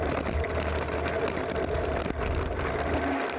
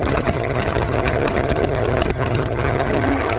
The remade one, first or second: second